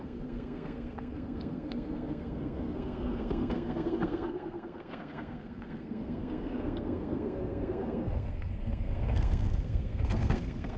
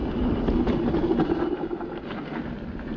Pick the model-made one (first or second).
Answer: first